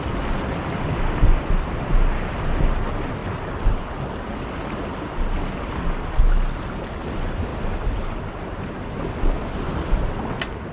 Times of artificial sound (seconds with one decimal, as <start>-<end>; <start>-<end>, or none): 7.5-10.0